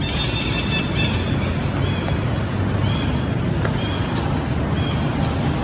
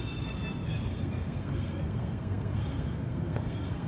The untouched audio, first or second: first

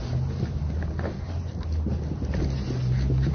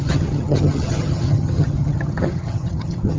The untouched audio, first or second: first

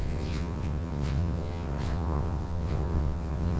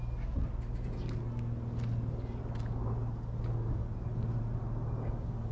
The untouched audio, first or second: second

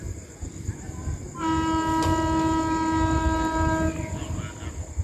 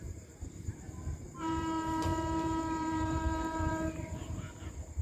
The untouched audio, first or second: first